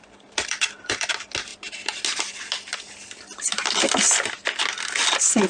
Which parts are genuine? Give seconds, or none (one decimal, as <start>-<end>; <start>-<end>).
1.1-5.5